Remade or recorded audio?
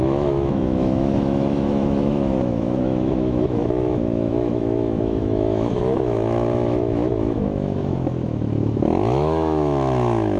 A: remade